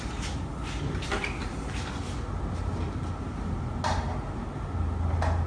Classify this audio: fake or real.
real